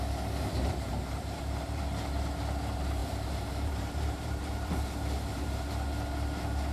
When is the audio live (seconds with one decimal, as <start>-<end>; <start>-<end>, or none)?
0.0-1.2; 1.8-3.0; 5.7-6.7